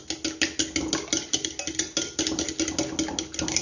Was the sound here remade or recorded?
recorded